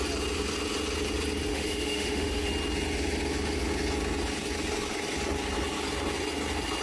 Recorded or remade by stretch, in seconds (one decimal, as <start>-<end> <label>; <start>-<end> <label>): 0.0-1.5 recorded; 1.5-2.5 remade; 2.5-6.8 recorded